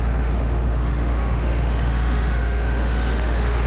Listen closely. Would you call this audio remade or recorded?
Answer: remade